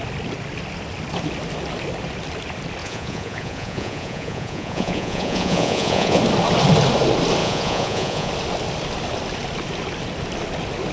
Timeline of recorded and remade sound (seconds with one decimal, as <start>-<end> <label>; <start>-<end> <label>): 0.0-2.8 recorded; 2.8-6.2 remade; 6.2-7.4 recorded; 7.4-8.3 remade; 8.3-10.9 recorded

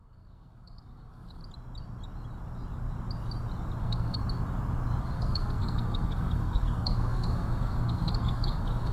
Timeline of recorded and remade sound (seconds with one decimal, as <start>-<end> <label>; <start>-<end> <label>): 0.0-1.4 remade; 1.4-3.8 recorded; 3.8-4.2 remade; 4.2-5.0 recorded; 5.0-8.9 remade

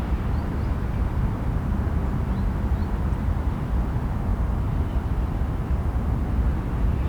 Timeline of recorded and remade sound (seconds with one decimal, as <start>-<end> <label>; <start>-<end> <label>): 0.0-2.8 recorded; 2.8-3.7 remade; 3.7-7.1 recorded

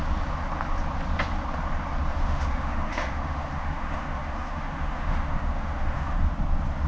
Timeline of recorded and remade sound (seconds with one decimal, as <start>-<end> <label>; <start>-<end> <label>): 0.0-2.1 recorded; 2.1-6.2 remade; 6.2-6.9 recorded